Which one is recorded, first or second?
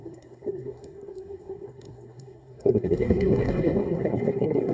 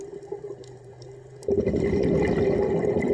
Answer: second